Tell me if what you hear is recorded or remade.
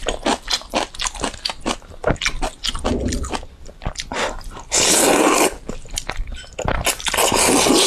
recorded